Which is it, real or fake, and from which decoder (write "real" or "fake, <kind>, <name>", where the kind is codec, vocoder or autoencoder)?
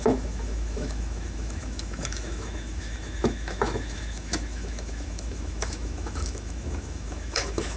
fake, autoencoder, DAC-VAE